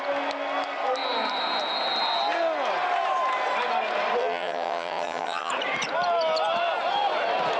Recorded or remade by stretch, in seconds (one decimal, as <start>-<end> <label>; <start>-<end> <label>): 0.0-4.2 recorded; 4.2-5.5 remade; 5.5-7.6 recorded